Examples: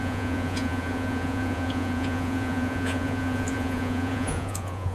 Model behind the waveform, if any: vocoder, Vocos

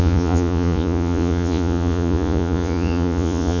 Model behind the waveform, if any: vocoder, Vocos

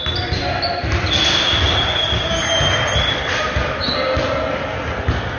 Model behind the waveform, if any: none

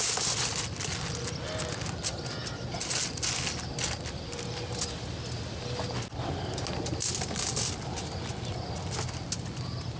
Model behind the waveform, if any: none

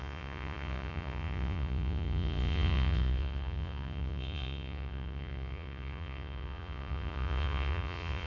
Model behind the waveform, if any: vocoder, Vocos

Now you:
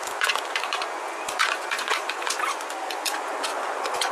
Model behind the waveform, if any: vocoder, Vocos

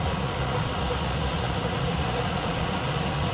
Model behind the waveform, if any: vocoder, Vocos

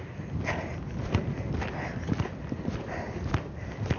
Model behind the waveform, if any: none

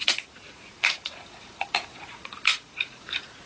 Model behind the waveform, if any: vocoder, Vocos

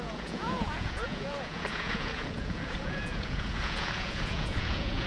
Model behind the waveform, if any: vocoder, Vocos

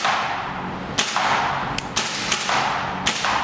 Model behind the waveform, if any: none